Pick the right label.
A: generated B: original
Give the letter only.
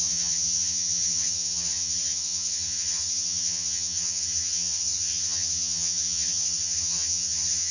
A